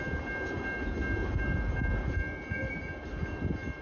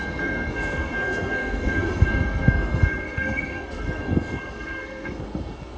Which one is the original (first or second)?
first